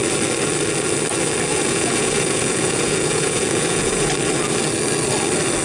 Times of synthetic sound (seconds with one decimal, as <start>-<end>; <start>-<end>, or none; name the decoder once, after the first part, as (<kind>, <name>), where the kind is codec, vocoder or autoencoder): 1.5-4.1 (vocoder, Vocos)